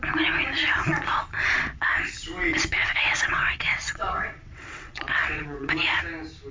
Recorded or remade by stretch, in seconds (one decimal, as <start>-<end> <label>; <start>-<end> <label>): 0.0-2.8 recorded; 2.8-5.7 remade; 5.7-6.5 recorded